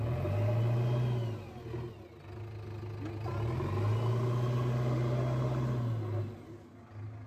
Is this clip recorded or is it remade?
recorded